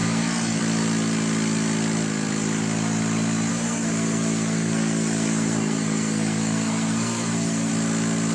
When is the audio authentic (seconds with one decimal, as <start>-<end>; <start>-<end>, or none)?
0.6-3.5; 7.7-8.3